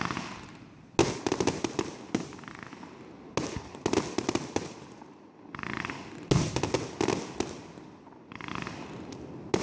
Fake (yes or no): no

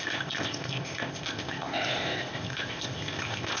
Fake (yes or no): yes